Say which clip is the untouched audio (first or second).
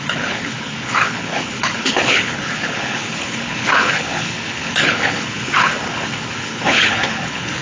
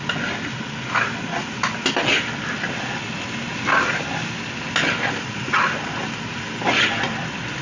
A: second